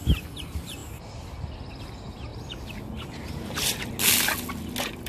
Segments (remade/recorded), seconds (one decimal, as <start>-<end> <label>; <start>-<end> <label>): 0.0-5.1 recorded